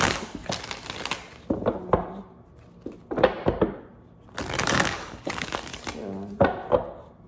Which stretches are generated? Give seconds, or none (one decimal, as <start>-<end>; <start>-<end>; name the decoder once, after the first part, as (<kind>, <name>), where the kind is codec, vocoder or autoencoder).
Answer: 0.0-0.4 (codec, DAC); 4.6-5.7